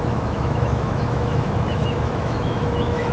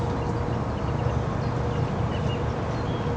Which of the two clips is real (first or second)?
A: second